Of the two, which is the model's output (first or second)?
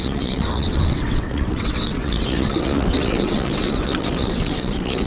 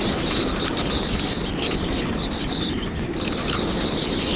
first